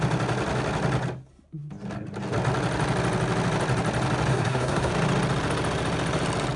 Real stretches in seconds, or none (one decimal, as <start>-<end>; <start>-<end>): 0.0-4.3; 4.9-6.6